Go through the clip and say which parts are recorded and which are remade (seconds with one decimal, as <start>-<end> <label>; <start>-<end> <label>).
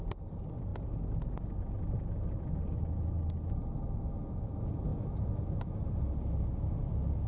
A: 0.0-7.3 recorded